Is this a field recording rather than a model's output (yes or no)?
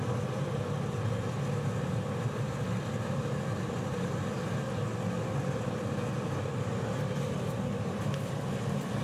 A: yes